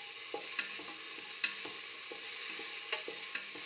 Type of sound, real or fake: real